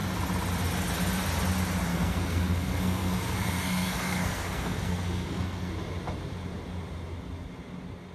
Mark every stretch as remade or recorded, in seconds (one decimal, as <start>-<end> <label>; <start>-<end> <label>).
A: 0.0-1.9 recorded; 1.9-5.7 remade; 5.7-8.1 recorded